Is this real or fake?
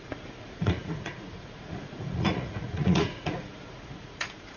fake